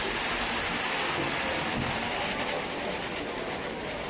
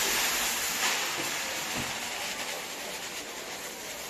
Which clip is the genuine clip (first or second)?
first